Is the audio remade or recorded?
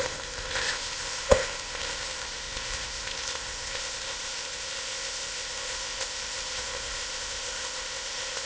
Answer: remade